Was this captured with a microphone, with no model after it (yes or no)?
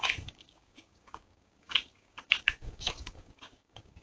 no